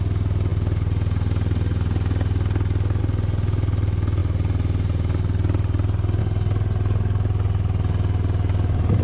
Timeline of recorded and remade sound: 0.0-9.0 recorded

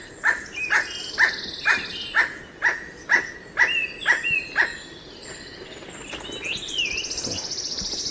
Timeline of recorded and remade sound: 0.0-8.1 recorded

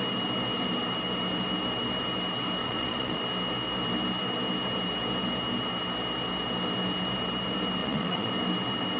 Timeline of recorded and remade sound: 0.0-2.6 recorded; 2.6-3.2 remade; 3.2-7.8 recorded; 7.8-8.3 remade; 8.3-9.0 recorded

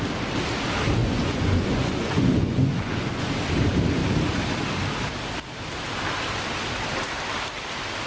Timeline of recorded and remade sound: 0.0-1.0 recorded; 1.0-3.3 remade; 3.3-8.1 recorded

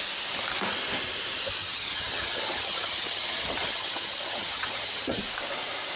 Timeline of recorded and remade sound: 0.0-1.6 recorded; 1.6-5.2 remade; 5.2-6.0 recorded

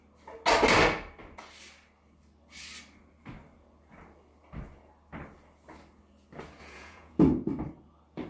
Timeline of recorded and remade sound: 0.0-6.6 recorded; 6.6-7.2 remade; 7.2-8.3 recorded